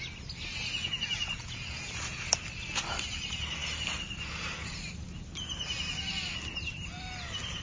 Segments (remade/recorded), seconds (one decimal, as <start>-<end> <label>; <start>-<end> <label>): 0.0-0.7 recorded; 0.7-1.9 remade; 1.9-7.6 recorded